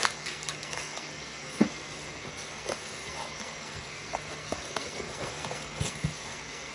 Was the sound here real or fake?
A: fake